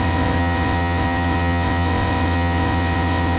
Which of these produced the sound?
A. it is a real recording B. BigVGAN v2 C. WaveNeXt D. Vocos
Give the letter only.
C